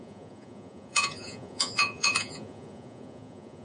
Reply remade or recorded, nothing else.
remade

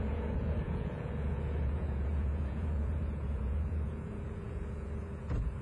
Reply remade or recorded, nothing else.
remade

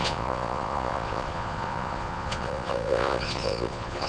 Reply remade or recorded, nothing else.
remade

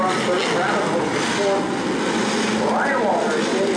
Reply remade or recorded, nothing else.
recorded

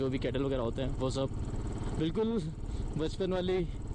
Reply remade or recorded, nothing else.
recorded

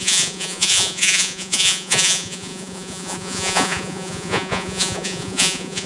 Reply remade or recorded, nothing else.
remade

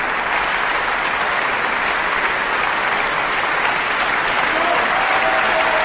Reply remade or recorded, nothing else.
recorded